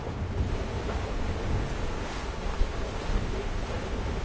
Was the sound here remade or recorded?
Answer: recorded